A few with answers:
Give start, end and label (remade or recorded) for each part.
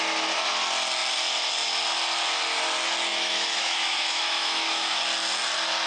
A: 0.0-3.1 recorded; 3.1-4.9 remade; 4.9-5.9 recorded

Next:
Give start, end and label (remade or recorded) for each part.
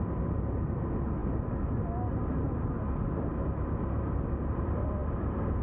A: 0.0-5.6 recorded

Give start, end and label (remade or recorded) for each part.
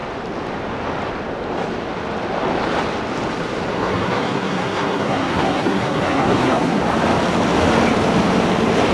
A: 0.0-3.7 recorded; 3.7-6.8 remade; 6.8-8.9 recorded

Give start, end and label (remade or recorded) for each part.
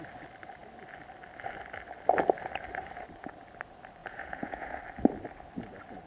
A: 0.0-4.0 recorded; 4.0-4.8 remade; 4.8-6.1 recorded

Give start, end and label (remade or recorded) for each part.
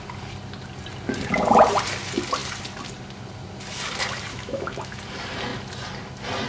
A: 0.0-4.3 recorded; 4.3-5.0 remade; 5.0-6.5 recorded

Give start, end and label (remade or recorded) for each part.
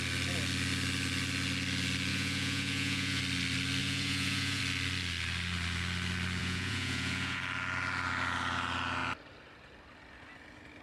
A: 0.0-2.1 recorded; 2.1-3.2 remade; 3.2-3.8 recorded; 3.8-4.6 remade; 4.6-6.4 recorded; 6.4-7.4 remade; 7.4-10.8 recorded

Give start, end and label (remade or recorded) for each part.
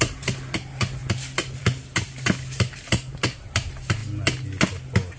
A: 0.0-5.2 recorded